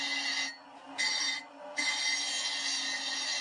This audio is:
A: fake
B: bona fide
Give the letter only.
B